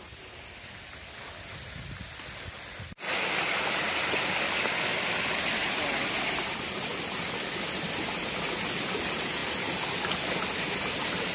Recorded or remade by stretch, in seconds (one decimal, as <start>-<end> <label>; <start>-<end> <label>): 0.0-11.3 recorded